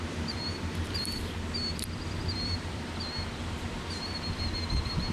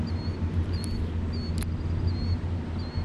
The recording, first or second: second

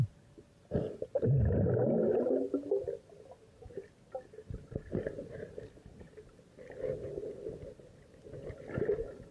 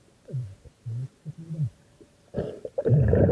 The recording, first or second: first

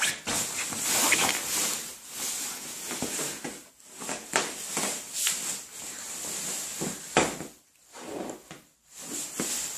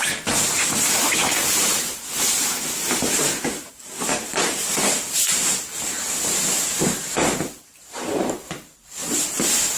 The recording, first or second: first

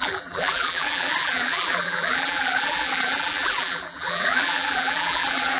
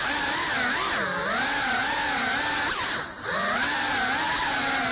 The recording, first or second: second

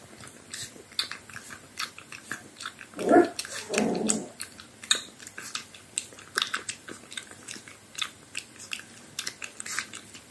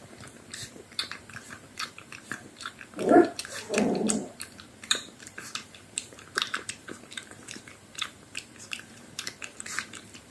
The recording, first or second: first